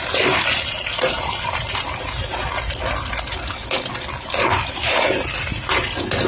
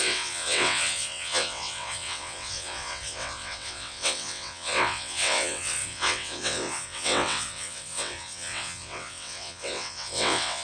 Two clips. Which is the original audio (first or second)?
first